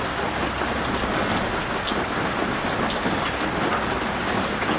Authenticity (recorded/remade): recorded